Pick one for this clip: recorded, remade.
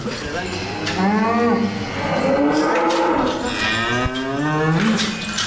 recorded